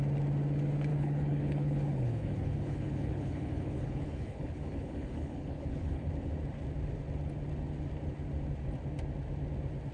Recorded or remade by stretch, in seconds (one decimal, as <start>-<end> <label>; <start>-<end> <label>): 0.0-0.9 recorded; 0.9-6.1 remade; 6.1-9.9 recorded